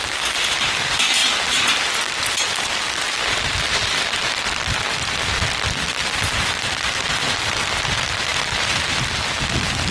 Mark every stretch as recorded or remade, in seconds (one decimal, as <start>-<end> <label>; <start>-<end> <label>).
0.0-8.3 recorded; 8.3-8.9 remade; 8.9-9.9 recorded